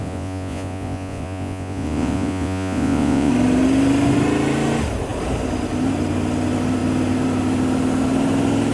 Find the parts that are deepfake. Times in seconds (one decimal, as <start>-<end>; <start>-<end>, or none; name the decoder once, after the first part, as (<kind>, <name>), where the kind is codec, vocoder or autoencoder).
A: 0.0-3.3 (vocoder, Vocos)